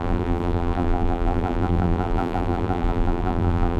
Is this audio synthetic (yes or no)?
yes